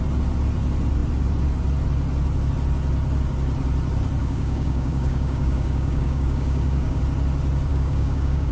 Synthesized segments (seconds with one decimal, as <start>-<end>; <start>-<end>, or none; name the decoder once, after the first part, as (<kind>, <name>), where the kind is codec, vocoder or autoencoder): 4.2-7.0 (codec, DAC); 7.7-8.5